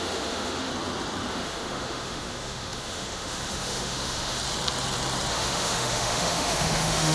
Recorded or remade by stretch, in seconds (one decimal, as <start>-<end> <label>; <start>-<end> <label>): 0.0-0.7 remade; 0.7-1.3 recorded; 1.3-4.4 remade; 4.4-5.3 recorded; 5.3-7.1 remade